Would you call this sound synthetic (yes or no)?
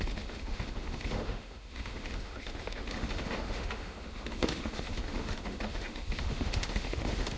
yes